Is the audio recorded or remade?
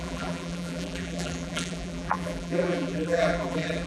remade